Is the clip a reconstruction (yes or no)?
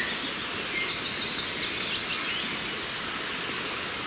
no